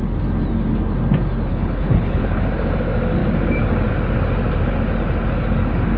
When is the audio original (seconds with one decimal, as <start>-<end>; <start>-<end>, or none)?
0.0-1.5; 2.4-6.0